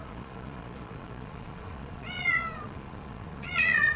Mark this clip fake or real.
fake